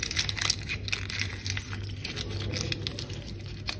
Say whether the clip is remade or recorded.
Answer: recorded